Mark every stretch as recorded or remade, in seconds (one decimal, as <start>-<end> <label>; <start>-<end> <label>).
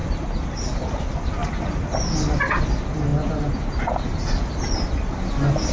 0.0-0.7 remade; 0.7-5.7 recorded